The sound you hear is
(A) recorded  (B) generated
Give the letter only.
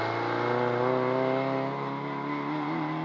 A